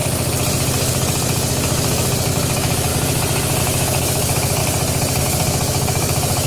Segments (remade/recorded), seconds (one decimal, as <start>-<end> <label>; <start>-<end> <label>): 0.0-2.3 recorded; 2.3-2.9 remade; 2.9-3.6 recorded; 3.6-4.6 remade; 4.6-5.2 recorded; 5.2-6.5 remade